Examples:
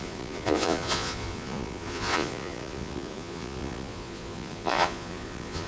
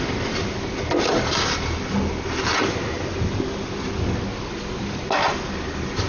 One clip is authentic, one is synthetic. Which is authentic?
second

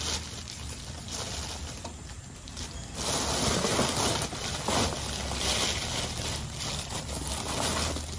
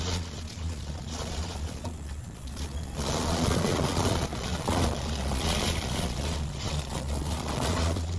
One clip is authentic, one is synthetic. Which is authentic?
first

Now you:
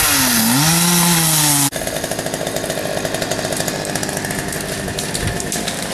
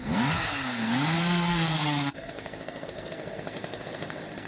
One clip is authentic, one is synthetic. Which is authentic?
first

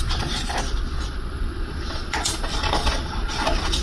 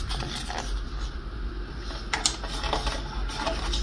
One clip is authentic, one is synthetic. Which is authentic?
second